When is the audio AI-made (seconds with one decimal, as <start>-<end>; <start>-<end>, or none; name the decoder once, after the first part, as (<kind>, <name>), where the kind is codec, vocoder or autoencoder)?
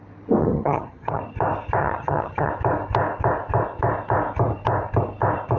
0.4-1.2 (vocoder, HiFi-GAN); 1.8-2.5